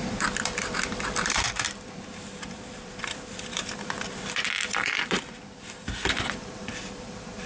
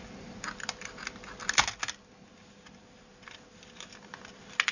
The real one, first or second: second